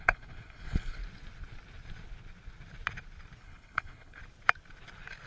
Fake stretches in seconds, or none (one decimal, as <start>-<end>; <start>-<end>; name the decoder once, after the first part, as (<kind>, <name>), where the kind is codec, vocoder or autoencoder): 0.0-1.0 (codec, HILCodec); 3.4-4.2